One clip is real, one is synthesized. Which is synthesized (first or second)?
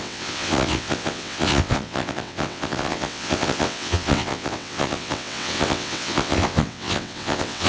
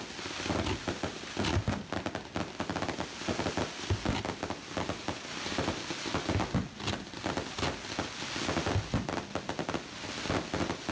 first